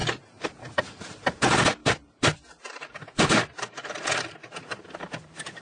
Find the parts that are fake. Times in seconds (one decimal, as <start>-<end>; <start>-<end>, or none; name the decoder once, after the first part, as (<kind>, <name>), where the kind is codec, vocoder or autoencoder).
0.0-0.8 (vocoder, BigVGAN v2); 1.8-5.6